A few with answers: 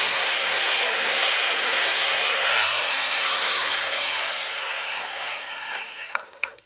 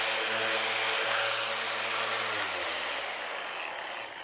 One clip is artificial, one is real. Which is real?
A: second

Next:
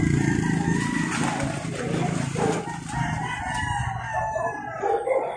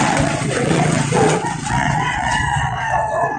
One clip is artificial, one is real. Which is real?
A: first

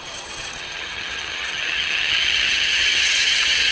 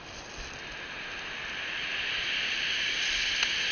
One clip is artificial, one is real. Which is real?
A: second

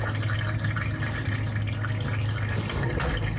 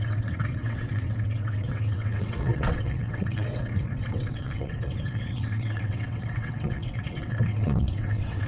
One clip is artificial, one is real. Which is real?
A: first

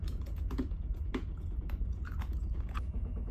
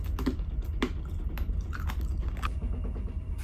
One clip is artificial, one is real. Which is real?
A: second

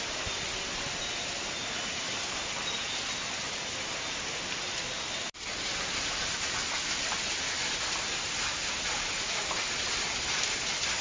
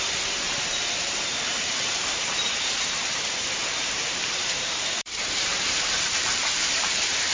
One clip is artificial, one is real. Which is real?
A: first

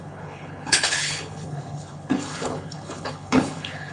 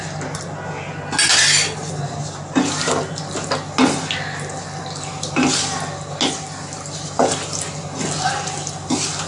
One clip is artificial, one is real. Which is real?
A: second